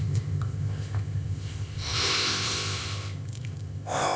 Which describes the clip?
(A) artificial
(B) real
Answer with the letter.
A